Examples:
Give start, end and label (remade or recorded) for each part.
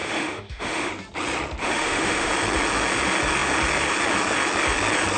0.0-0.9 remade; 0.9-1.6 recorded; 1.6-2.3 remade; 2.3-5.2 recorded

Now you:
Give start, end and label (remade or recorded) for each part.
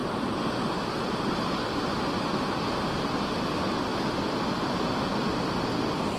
0.0-6.2 recorded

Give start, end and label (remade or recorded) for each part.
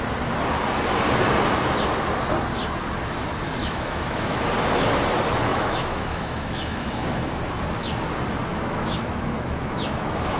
0.0-3.6 recorded; 3.6-4.4 remade; 4.4-5.5 recorded; 5.5-7.3 remade; 7.3-8.5 recorded; 8.5-10.4 remade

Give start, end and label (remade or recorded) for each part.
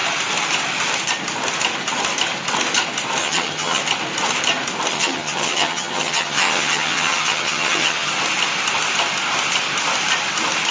0.0-3.2 recorded; 3.2-3.8 remade; 3.8-4.9 recorded; 4.9-8.1 remade; 8.1-10.7 recorded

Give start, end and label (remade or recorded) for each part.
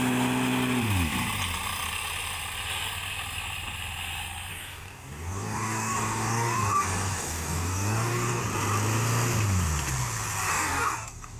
0.0-4.5 recorded; 4.5-8.4 remade; 8.4-10.5 recorded; 10.5-11.4 remade